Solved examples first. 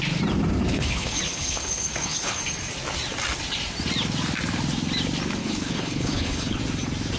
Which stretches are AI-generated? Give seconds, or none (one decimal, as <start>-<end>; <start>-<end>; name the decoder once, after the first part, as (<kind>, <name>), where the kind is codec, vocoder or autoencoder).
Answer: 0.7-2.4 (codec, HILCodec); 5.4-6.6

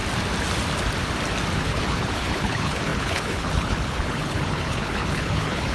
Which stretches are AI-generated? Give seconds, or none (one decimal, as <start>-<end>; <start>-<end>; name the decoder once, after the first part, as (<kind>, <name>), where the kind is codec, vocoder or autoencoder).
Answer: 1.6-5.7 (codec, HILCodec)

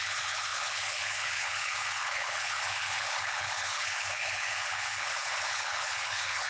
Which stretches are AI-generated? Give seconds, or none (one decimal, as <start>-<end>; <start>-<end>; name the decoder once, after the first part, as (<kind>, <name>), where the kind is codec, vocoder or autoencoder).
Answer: 0.0-6.5 (codec, HILCodec)

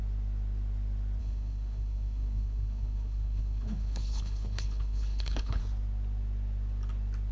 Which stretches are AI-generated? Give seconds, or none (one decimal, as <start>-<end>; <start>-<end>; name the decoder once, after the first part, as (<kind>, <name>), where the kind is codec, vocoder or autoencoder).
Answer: 1.2-5.6 (codec, HILCodec)

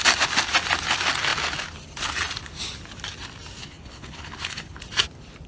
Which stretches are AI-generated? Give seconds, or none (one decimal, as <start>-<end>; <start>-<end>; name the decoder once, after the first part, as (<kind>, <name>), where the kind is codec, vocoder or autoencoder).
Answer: 3.6-4.8 (codec, HILCodec)

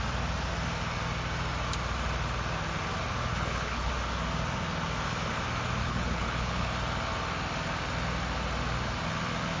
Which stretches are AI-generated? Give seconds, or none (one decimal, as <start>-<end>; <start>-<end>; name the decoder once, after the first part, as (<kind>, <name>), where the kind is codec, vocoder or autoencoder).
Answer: 3.3-3.9 (codec, HILCodec); 5.8-6.7

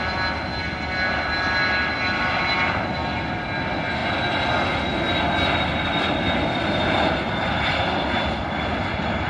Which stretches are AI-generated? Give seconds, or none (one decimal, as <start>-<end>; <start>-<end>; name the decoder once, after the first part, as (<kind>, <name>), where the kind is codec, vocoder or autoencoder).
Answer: none

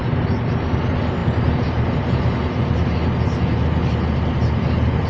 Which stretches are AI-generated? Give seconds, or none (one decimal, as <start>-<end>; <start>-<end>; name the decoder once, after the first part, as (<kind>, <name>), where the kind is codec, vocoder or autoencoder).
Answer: none